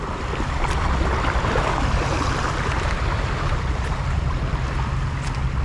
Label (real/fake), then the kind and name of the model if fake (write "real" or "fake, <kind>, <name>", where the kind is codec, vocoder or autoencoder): fake, vocoder, BigVGAN v2